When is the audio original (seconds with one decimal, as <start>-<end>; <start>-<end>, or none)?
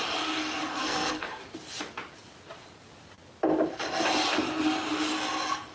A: 0.0-0.8; 1.4-5.7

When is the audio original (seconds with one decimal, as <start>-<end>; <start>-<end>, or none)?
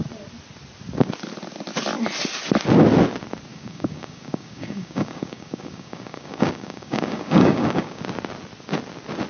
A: 0.0-3.5; 8.0-9.3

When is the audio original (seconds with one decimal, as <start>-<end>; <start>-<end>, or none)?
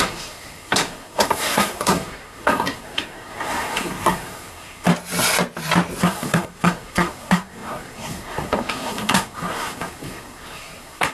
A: 4.9-6.0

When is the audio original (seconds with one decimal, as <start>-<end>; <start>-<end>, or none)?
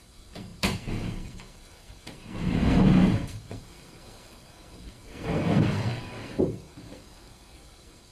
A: none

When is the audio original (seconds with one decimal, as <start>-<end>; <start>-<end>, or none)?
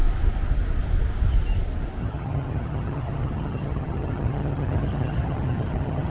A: 0.0-2.0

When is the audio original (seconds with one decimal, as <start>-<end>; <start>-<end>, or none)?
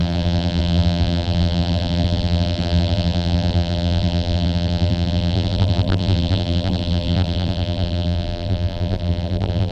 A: none